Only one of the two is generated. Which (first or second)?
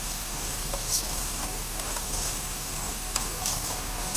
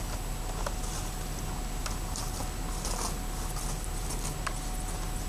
first